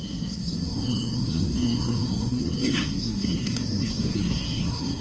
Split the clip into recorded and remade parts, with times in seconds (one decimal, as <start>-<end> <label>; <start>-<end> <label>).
0.0-5.0 remade